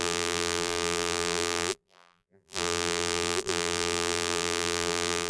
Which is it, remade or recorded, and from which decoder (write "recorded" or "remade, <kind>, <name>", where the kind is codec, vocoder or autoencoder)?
remade, vocoder, BigVGAN v2